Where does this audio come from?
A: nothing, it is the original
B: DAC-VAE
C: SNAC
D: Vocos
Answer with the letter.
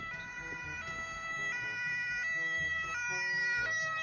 A